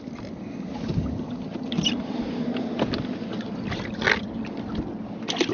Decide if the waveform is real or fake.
real